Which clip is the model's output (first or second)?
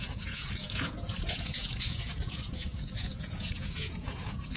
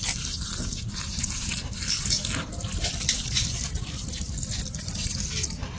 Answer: first